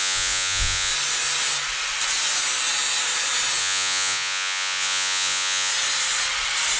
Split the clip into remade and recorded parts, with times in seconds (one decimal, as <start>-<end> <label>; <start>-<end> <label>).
0.0-0.9 remade; 0.9-3.6 recorded; 3.6-5.7 remade; 5.7-6.8 recorded